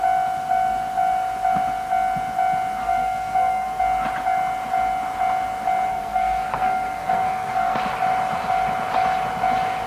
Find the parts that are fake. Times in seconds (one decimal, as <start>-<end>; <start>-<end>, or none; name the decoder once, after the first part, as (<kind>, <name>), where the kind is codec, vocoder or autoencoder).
2.8-3.8 (codec, SNAC); 5.9-7.8